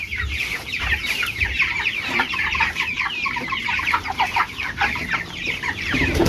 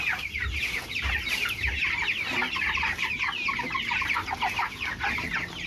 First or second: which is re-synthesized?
first